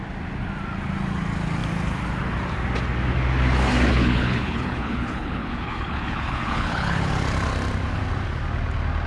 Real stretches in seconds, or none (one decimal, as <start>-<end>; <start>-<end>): 0.0-3.9; 7.1-9.1